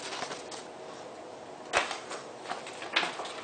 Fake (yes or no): no